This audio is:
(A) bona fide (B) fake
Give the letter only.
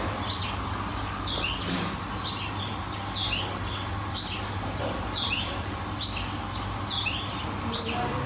A